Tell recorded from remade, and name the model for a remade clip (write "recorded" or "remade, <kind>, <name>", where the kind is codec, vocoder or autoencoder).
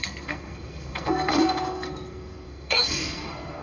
remade, codec, SNAC